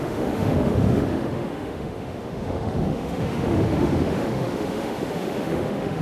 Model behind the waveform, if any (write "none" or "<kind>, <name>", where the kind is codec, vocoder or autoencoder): autoencoder, DAC-VAE